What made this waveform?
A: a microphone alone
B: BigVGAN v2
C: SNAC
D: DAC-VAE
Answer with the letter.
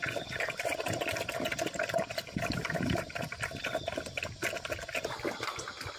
A